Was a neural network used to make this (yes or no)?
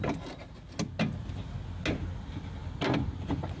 no